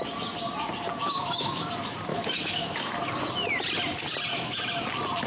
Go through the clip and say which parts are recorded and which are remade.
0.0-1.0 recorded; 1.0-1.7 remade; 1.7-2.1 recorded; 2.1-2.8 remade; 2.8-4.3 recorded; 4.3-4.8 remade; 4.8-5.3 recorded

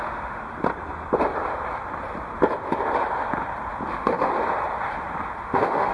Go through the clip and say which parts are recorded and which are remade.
0.0-0.4 remade; 0.4-3.9 recorded; 3.9-4.3 remade; 4.3-5.4 recorded; 5.4-5.9 remade

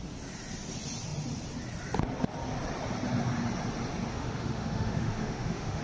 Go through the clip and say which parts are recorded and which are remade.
0.0-4.1 recorded; 4.1-5.8 remade

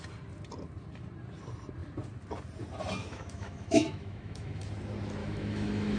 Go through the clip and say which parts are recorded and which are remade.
0.0-3.0 recorded; 3.0-4.6 remade; 4.6-5.2 recorded; 5.2-6.0 remade

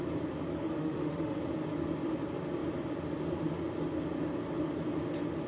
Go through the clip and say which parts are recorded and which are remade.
0.0-0.8 recorded; 0.8-1.4 remade; 1.4-5.5 recorded

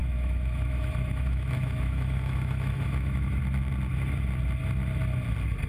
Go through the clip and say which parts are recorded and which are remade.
0.0-3.4 remade; 3.4-5.7 recorded

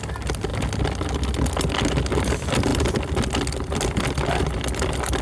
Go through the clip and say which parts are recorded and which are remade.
0.0-5.2 recorded

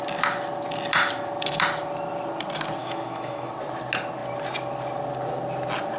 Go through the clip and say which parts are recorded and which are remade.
0.0-2.8 recorded; 2.8-3.5 remade; 3.5-6.0 recorded